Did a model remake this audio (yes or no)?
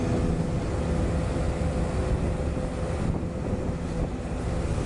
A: no